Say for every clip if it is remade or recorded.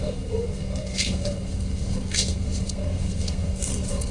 remade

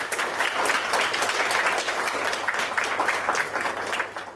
recorded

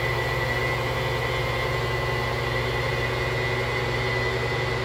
recorded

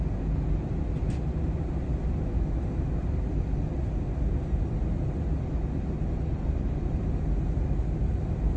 recorded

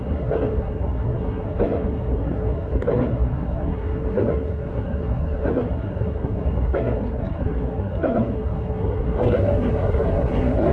remade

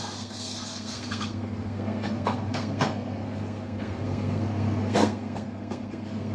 remade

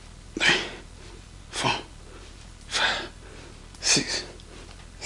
recorded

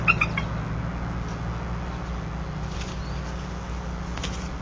recorded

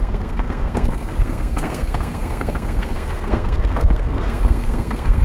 remade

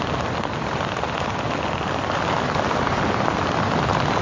recorded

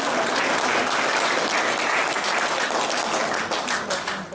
recorded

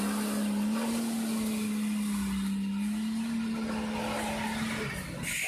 recorded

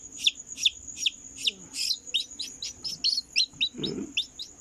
recorded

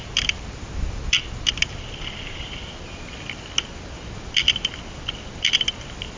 recorded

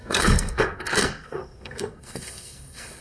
remade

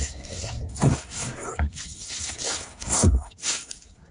remade